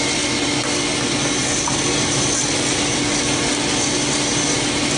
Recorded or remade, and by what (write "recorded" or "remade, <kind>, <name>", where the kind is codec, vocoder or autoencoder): recorded